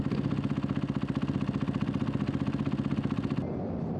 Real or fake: real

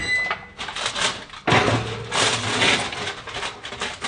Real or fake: real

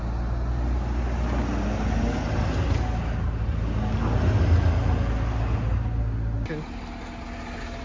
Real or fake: real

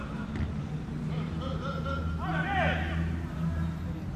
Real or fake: real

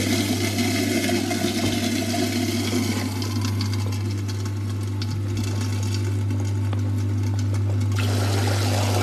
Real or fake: real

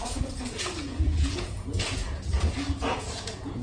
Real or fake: fake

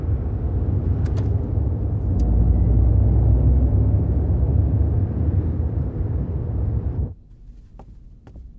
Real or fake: real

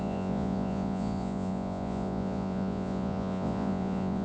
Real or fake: fake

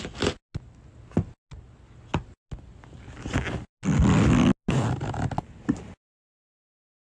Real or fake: real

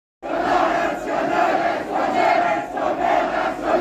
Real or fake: real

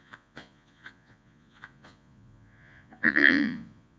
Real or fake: fake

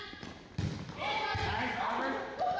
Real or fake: real